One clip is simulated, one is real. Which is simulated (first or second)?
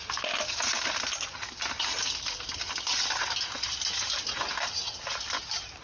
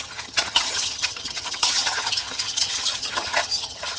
second